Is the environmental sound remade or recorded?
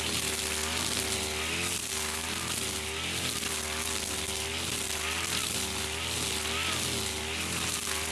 recorded